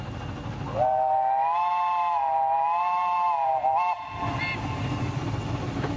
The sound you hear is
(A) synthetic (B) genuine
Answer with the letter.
B